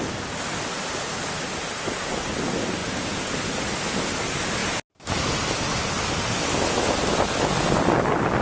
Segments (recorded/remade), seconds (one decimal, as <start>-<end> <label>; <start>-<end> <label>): 0.0-8.4 recorded